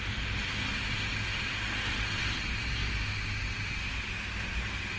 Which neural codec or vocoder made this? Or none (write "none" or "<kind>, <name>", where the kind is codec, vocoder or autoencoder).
none